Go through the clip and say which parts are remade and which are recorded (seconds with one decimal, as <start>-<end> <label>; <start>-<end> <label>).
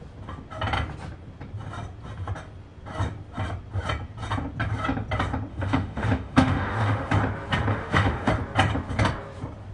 0.0-5.5 recorded; 5.5-7.1 remade; 7.1-7.7 recorded; 7.7-8.3 remade; 8.3-9.7 recorded